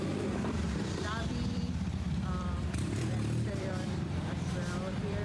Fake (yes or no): yes